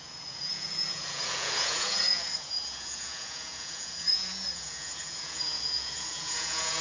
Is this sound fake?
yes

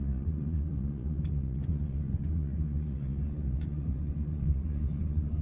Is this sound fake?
yes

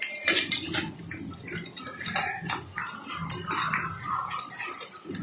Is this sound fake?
no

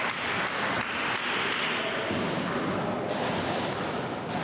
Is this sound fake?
no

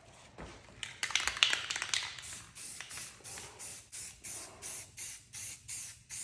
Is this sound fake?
no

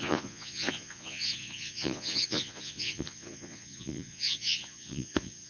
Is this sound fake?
yes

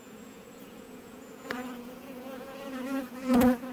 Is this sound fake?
yes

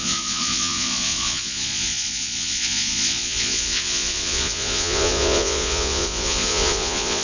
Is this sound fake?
yes